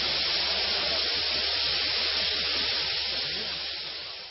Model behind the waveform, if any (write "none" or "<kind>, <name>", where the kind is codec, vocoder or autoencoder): none